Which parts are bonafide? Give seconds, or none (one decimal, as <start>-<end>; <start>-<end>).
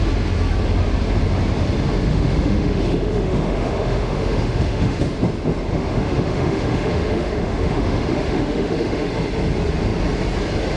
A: 0.0-2.1; 5.0-5.7; 9.1-10.8